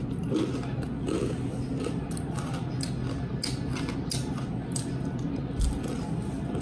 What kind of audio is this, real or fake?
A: real